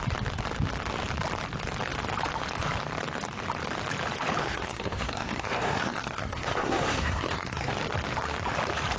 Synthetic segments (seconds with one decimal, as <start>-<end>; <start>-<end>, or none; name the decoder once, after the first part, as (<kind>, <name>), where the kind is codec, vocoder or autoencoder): 4.4-7.7 (codec, SNAC)